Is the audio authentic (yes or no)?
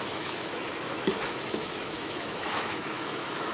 no